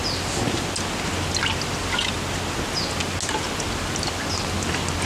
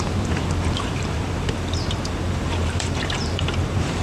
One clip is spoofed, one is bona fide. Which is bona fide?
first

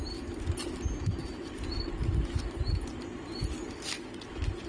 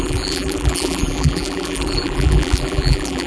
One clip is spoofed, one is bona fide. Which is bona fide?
first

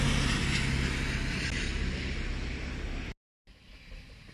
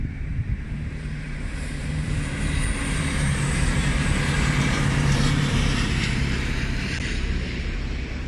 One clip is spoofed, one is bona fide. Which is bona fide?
first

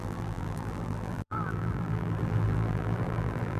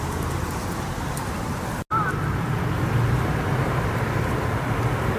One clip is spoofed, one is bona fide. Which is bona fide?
second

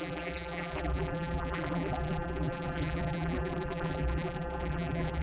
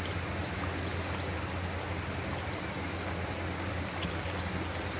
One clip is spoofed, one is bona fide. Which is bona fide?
second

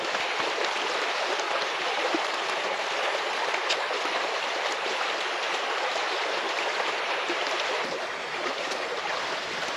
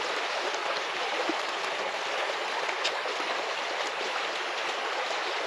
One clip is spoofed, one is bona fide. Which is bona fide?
second